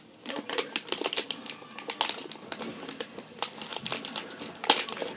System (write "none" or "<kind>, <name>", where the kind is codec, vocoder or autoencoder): none